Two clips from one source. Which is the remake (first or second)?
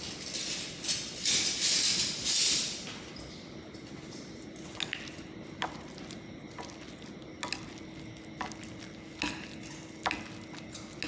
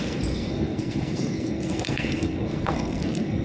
second